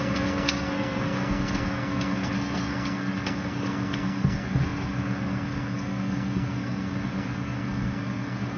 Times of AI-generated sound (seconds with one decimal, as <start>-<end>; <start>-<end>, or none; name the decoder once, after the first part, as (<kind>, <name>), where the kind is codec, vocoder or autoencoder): 0.0-8.6 (codec, SNAC)